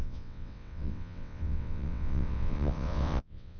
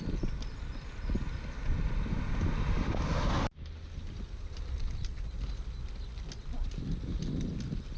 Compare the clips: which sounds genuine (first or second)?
second